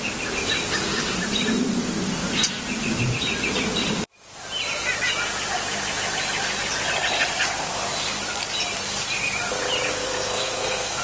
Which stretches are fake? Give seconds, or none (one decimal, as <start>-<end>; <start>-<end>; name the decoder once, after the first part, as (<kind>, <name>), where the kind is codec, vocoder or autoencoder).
9.9-11.0 (codec, SNAC)